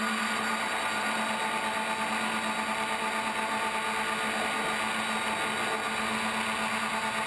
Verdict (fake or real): real